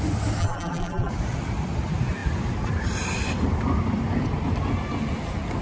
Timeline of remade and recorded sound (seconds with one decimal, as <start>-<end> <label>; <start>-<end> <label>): 0.0-0.4 recorded; 0.4-1.1 remade; 1.1-5.6 recorded